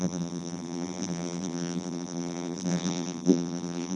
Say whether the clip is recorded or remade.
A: remade